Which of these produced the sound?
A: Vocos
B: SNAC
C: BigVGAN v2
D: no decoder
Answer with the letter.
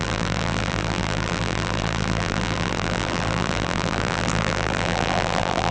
C